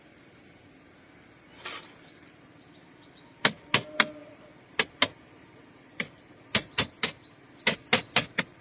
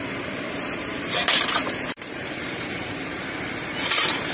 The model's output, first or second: second